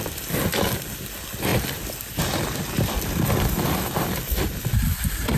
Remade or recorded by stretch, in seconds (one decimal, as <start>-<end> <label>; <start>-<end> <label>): 0.0-5.4 recorded